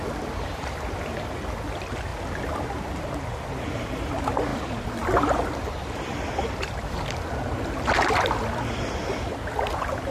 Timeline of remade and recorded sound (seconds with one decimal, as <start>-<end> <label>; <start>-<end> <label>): 0.0-4.5 recorded; 4.5-6.6 remade; 6.6-10.1 recorded